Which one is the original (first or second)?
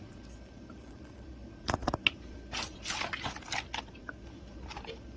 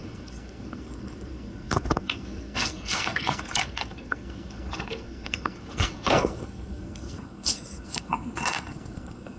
first